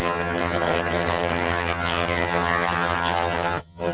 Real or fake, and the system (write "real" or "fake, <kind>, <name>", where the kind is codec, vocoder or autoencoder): fake, vocoder, HiFi-GAN